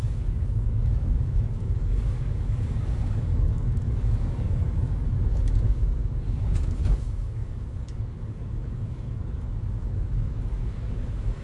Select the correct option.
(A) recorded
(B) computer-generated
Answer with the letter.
B